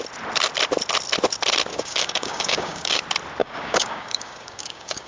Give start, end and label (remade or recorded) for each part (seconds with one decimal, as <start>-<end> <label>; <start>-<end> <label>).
0.0-1.7 recorded; 1.7-3.0 remade; 3.0-3.4 recorded; 3.4-5.1 remade